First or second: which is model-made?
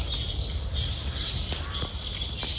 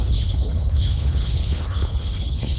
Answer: second